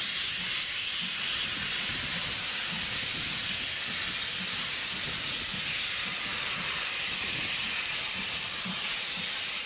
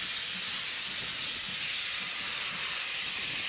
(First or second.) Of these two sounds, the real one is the second